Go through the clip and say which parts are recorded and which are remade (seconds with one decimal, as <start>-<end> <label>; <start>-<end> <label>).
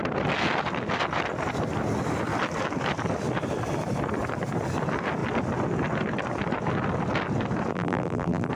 0.0-7.7 recorded; 7.7-8.5 remade